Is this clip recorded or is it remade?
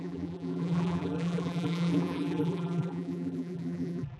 remade